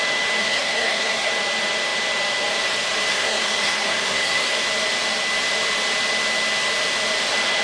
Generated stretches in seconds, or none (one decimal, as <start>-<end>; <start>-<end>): 0.4-1.3; 3.1-4.6